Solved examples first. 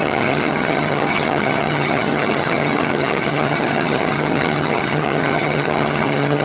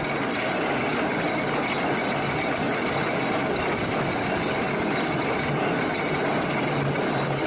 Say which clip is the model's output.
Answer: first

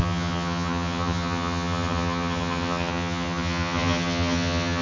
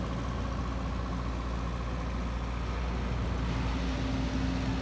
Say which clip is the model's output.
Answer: first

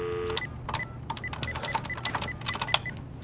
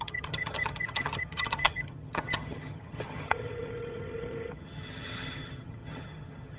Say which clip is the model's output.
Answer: second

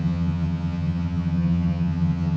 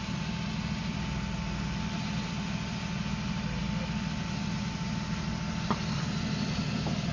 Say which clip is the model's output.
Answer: first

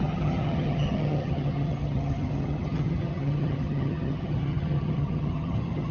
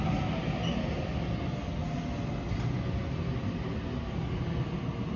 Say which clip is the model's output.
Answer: first